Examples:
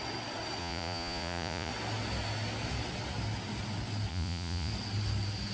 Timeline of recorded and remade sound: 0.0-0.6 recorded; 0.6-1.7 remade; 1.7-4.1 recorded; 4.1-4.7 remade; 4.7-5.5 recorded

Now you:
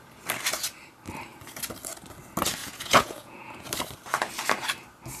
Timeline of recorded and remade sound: 0.0-2.6 recorded; 2.6-3.7 remade; 3.7-5.2 recorded

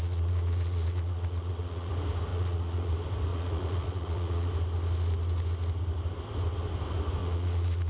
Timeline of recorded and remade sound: 0.0-1.9 remade; 1.9-2.3 recorded; 2.3-2.9 remade; 2.9-3.3 recorded; 3.3-4.5 remade; 4.5-7.2 recorded; 7.2-7.9 remade